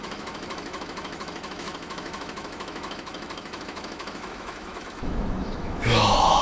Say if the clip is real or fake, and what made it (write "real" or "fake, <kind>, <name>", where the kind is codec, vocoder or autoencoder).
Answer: fake, autoencoder, DAC-VAE